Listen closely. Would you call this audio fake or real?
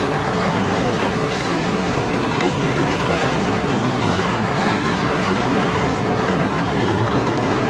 fake